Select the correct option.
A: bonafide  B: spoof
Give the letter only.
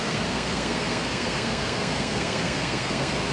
B